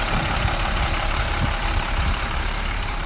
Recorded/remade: remade